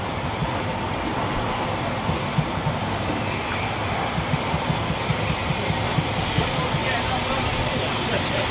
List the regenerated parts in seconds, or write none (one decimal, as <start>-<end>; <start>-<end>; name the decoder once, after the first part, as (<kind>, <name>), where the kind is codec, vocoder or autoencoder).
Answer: none